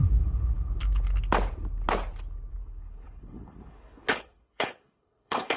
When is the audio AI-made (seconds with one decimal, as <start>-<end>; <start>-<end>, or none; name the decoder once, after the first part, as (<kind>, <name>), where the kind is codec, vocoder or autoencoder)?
0.0-0.8 (codec, HILCodec); 2.6-5.6